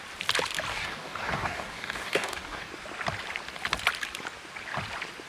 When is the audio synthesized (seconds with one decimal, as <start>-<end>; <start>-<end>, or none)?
0.7-2.7